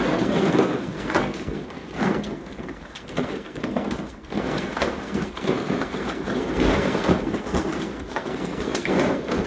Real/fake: fake